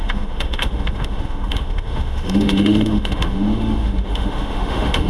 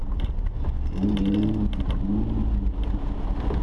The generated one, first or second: first